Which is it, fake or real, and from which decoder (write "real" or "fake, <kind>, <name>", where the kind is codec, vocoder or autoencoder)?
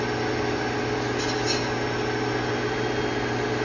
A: real